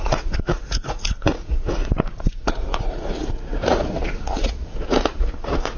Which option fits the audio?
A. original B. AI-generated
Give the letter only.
B